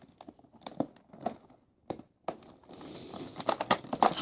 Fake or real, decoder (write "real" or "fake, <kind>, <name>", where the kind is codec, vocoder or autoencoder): real